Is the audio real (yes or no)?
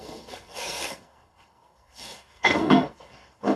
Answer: no